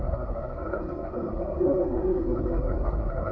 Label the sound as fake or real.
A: fake